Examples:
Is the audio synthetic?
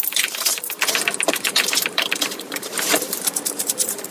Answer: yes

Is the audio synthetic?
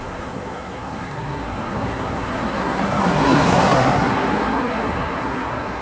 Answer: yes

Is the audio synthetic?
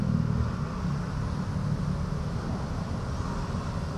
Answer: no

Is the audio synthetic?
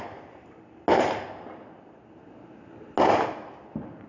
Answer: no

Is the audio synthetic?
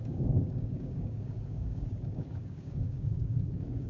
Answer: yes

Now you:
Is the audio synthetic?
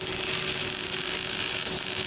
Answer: no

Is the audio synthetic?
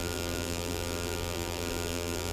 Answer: yes